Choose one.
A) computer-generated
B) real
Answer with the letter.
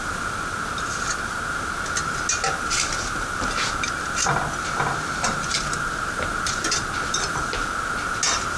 B